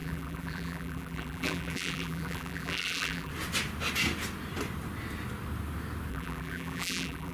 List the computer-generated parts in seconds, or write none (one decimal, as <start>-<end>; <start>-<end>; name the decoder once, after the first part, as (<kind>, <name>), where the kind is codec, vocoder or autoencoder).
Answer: 0.0-3.3 (vocoder, BigVGAN v2); 6.1-7.3